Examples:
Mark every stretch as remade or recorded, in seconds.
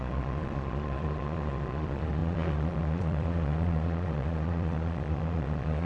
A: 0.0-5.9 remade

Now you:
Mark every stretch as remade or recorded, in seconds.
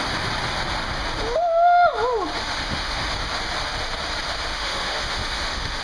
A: 0.0-2.4 recorded; 2.4-3.1 remade; 3.1-4.5 recorded; 4.5-5.8 remade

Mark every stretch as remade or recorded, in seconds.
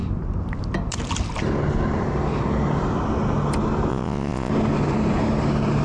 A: 0.0-3.9 recorded; 3.9-4.5 remade; 4.5-5.8 recorded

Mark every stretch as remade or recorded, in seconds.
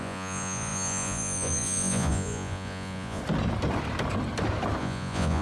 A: 0.0-3.2 remade; 3.2-4.8 recorded; 4.8-5.4 remade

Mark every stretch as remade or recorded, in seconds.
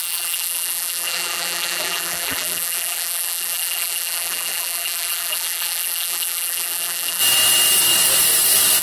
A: 0.0-7.2 remade; 7.2-8.8 recorded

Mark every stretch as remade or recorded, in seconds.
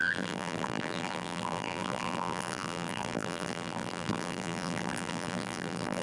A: 0.0-6.0 remade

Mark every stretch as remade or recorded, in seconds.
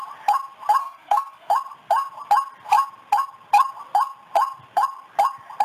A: 0.0-0.8 recorded; 0.8-1.5 remade; 1.5-5.6 recorded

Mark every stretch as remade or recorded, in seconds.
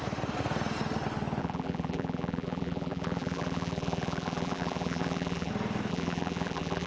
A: 0.0-1.4 recorded; 1.4-5.5 remade; 5.5-5.9 recorded; 5.9-6.9 remade